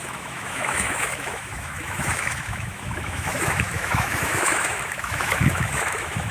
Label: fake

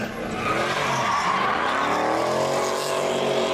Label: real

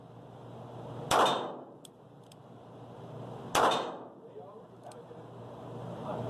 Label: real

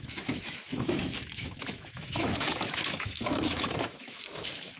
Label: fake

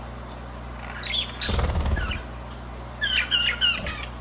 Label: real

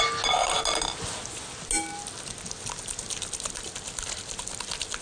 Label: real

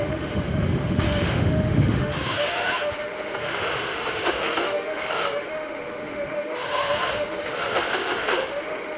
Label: fake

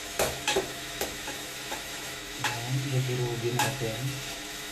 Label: fake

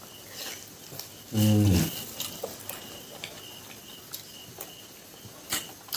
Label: real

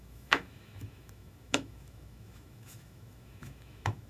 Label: fake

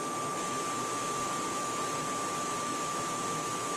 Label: fake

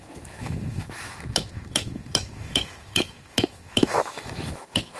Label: fake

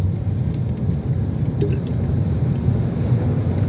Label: real